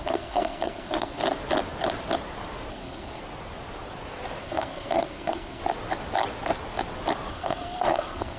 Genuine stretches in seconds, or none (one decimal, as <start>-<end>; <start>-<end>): 1.2-2.7; 3.2-4.4; 5.6-7.3